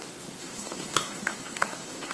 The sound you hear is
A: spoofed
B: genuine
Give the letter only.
A